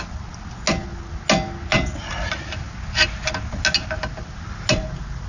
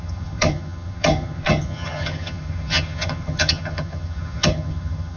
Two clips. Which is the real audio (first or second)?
first